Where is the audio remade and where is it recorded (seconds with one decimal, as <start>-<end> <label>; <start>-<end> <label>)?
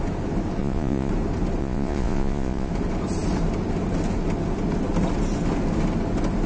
0.0-0.6 recorded; 0.6-1.1 remade; 1.1-1.6 recorded; 1.6-2.7 remade; 2.7-6.5 recorded